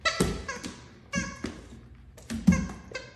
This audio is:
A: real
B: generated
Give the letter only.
A